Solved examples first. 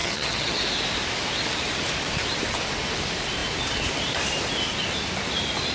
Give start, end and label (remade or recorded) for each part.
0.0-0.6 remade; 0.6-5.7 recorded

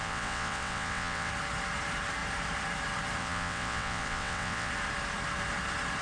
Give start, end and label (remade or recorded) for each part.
0.0-1.3 remade; 1.3-3.2 recorded; 3.2-4.7 remade; 4.7-6.0 recorded

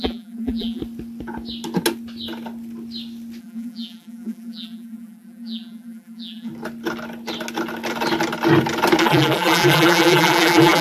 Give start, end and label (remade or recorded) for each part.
0.0-0.8 remade; 0.8-3.4 recorded; 3.4-6.5 remade; 6.5-9.0 recorded; 9.0-10.8 remade

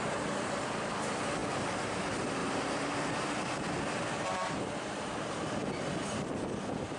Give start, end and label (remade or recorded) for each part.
0.0-7.0 recorded

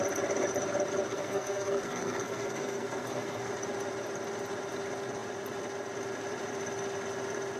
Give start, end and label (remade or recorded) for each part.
0.0-1.1 recorded; 1.1-3.5 remade; 3.5-7.6 recorded

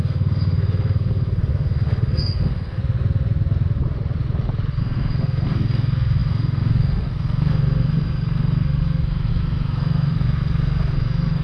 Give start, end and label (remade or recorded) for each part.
0.0-2.8 remade; 2.8-4.8 recorded; 4.8-11.4 remade

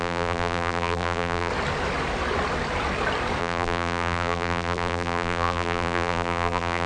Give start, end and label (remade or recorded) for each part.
0.0-1.5 remade; 1.5-3.4 recorded; 3.4-6.9 remade

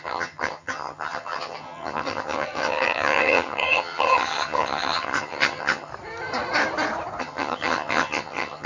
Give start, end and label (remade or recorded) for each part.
0.0-5.9 remade; 5.9-7.2 recorded; 7.2-8.7 remade